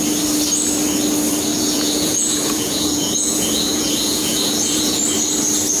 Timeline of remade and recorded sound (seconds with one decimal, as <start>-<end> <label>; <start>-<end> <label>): 0.0-1.5 recorded; 1.5-5.0 remade; 5.0-5.8 recorded